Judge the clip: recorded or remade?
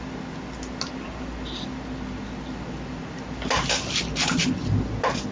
recorded